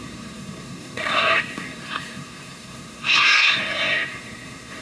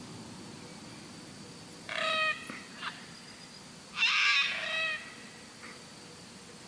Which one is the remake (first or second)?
first